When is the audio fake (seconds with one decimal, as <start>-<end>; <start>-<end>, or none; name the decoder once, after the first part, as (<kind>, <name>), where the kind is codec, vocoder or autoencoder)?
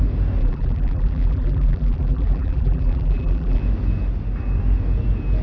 0.4-3.6 (vocoder, BigVGAN v2)